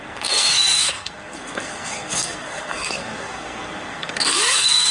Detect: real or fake fake